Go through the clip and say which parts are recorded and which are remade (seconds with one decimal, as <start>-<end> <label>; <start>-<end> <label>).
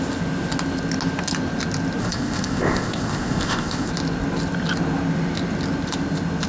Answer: 0.0-2.0 recorded; 2.0-3.9 remade; 3.9-6.5 recorded